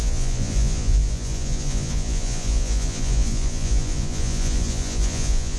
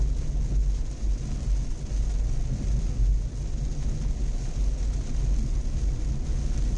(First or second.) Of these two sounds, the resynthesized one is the first